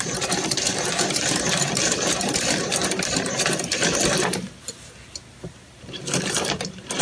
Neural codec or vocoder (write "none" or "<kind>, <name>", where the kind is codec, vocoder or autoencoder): vocoder, BigVGAN v2